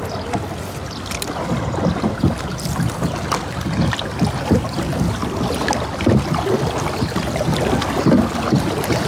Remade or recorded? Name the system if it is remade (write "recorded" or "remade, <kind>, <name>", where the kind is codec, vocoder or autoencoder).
recorded